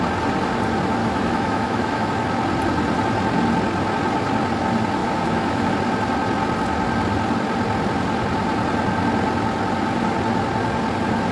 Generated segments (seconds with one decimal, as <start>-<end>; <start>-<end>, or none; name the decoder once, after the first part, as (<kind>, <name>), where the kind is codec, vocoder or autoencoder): 1.0-2.1 (autoencoder, DAC-VAE); 5.0-5.7